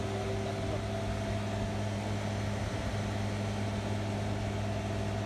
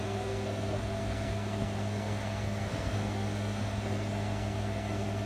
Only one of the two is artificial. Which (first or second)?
second